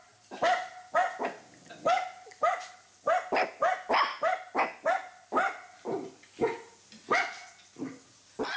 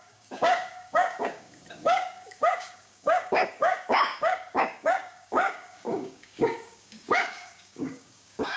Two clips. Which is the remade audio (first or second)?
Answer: second